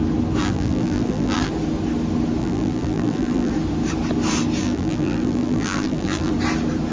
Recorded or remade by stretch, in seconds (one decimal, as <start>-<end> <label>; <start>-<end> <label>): 0.0-0.4 recorded; 0.4-1.5 remade; 1.5-2.4 recorded; 2.4-3.5 remade; 3.5-4.6 recorded; 4.6-6.3 remade; 6.3-6.9 recorded